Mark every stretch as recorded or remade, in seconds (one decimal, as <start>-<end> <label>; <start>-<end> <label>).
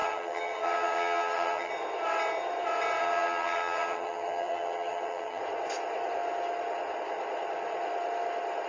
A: 0.0-1.7 remade; 1.7-3.0 recorded; 3.0-5.4 remade; 5.4-8.7 recorded